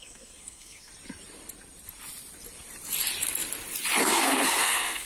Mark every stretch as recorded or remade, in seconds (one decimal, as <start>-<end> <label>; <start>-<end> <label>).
0.0-0.9 remade; 0.9-4.0 recorded; 4.0-5.1 remade